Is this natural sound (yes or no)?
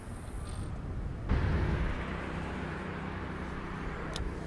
yes